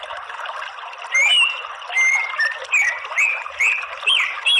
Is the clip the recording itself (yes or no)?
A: yes